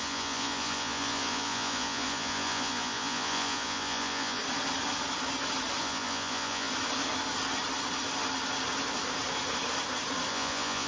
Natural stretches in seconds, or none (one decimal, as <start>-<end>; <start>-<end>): 4.4-5.8; 6.7-10.3